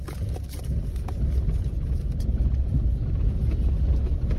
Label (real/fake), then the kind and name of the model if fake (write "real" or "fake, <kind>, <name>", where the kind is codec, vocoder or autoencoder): real